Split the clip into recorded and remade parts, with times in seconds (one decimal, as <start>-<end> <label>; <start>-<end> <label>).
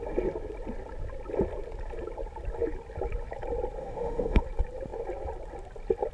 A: 0.0-3.8 recorded; 3.8-4.4 remade; 4.4-6.1 recorded